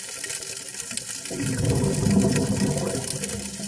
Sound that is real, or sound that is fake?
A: real